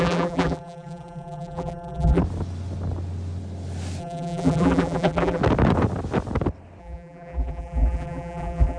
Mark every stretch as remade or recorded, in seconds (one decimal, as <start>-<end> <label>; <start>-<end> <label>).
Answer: 0.0-2.2 remade; 2.2-4.0 recorded; 4.0-5.4 remade; 5.4-6.8 recorded; 6.8-8.8 remade